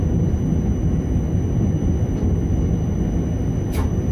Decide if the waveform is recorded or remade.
recorded